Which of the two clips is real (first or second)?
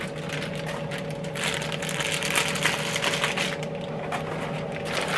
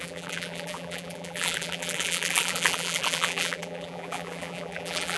first